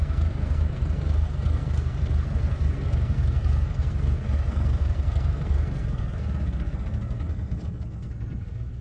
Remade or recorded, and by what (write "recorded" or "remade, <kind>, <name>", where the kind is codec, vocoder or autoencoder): remade, codec, SNAC